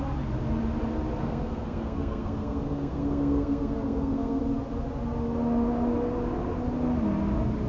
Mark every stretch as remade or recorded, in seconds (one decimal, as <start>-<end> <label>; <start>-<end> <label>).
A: 0.0-1.2 recorded; 1.2-4.4 remade; 4.4-7.7 recorded